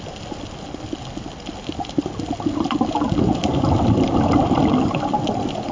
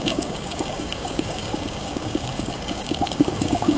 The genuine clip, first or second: first